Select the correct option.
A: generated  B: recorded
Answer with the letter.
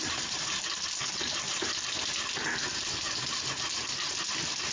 B